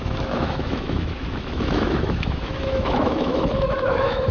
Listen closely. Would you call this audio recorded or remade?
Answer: remade